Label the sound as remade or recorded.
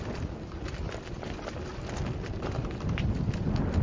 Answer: recorded